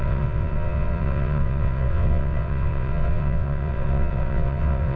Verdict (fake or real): fake